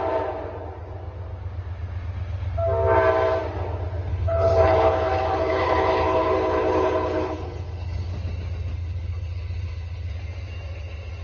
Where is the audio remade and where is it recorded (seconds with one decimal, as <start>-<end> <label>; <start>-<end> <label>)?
0.0-4.1 recorded; 4.1-8.1 remade; 8.1-8.8 recorded; 8.8-10.1 remade; 10.1-11.2 recorded